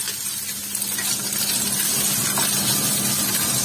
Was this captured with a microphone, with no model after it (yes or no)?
yes